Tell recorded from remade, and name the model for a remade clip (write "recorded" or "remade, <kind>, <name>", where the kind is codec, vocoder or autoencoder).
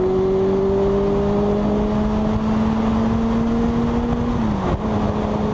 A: recorded